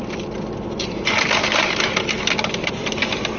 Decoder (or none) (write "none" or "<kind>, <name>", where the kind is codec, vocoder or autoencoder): none